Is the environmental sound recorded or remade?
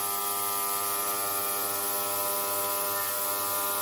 recorded